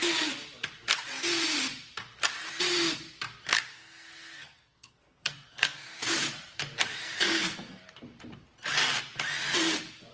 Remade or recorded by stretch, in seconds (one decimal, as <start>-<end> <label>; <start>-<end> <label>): 0.0-3.7 recorded; 3.7-6.0 remade; 6.0-7.0 recorded; 7.0-7.8 remade; 7.8-10.1 recorded